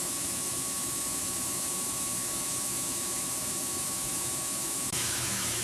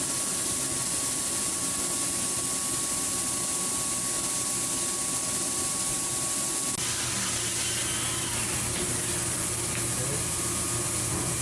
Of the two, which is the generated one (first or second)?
first